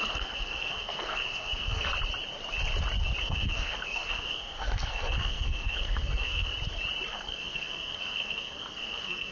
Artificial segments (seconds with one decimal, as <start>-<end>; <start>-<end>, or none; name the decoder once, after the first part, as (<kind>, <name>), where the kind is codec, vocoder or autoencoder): 0.0-1.9 (codec, SNAC); 3.2-6.5; 7.1-9.3